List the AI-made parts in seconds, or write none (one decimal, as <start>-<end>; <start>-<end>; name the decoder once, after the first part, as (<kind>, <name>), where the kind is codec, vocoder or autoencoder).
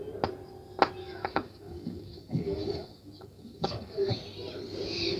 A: 1.0-4.1 (codec, DAC)